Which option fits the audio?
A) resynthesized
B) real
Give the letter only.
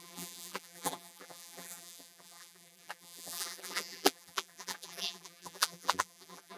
A